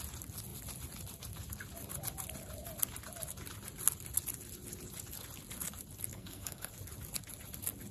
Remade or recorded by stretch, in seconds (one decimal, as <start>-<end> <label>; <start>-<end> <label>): 0.0-6.1 recorded; 6.1-6.7 remade; 6.7-7.9 recorded